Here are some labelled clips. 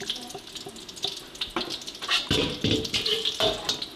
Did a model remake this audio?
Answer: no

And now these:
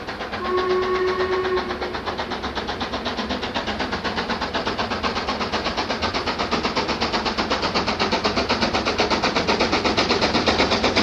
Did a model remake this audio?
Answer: no